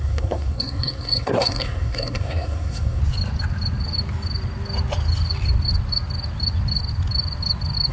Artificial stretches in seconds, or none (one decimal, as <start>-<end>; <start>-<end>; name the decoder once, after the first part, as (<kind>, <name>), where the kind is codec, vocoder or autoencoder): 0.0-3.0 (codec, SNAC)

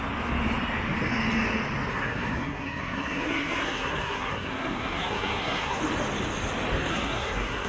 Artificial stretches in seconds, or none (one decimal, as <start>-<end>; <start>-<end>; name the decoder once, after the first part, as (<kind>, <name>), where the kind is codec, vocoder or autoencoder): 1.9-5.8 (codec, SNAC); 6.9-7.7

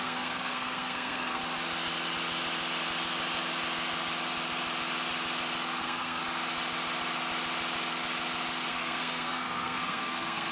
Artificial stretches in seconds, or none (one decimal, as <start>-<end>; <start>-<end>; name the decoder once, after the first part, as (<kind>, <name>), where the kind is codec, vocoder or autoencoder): 0.0-1.4 (codec, SNAC); 5.8-6.2; 8.7-10.5